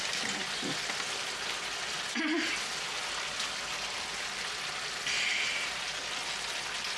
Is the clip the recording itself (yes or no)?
yes